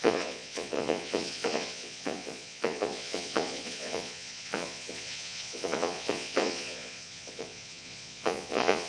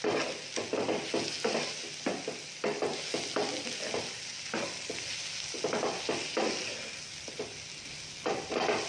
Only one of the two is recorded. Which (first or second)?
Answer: second